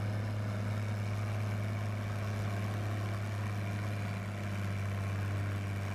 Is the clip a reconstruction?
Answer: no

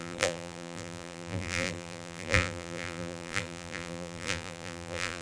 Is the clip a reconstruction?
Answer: yes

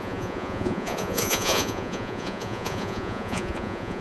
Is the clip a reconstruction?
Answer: yes